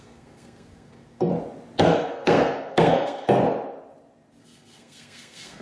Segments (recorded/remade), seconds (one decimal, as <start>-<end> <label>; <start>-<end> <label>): 0.0-1.3 remade; 1.3-1.8 recorded; 1.8-3.4 remade; 3.4-4.4 recorded; 4.4-5.6 remade

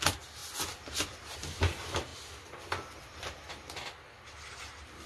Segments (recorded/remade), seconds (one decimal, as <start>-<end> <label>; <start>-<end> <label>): 0.0-5.1 recorded

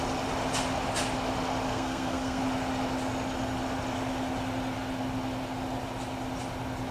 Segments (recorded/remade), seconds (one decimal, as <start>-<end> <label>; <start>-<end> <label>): 0.0-1.7 recorded; 1.7-2.4 remade; 2.4-6.9 recorded

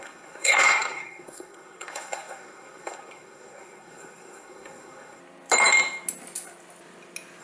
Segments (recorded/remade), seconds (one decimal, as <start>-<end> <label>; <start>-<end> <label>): 0.0-5.2 remade; 5.2-7.4 recorded